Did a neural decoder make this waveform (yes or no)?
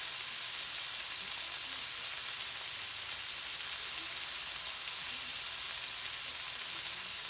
no